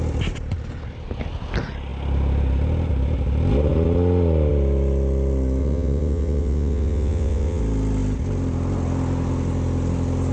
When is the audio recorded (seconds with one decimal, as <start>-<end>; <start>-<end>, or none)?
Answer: 0.0-5.6; 7.6-10.3